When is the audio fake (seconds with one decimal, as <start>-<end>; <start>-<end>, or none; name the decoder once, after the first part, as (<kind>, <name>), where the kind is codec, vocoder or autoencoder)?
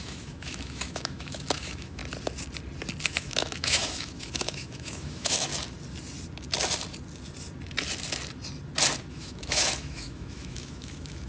0.0-2.0 (autoencoder, DAC-VAE); 3.1-5.5; 9.1-11.3